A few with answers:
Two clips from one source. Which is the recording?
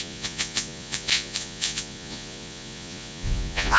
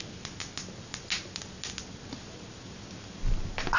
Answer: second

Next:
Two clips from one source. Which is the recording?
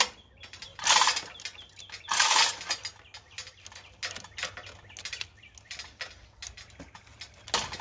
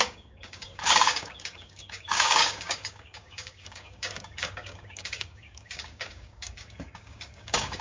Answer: first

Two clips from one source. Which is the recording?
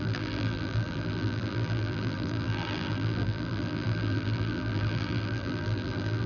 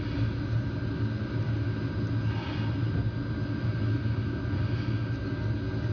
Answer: second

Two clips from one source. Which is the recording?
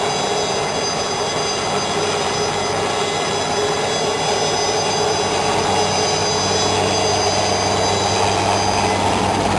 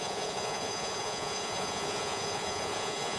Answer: first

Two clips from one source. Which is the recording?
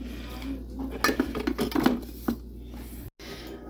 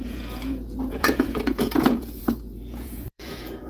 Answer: first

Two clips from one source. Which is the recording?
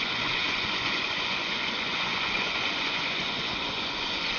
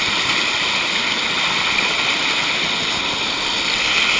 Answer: second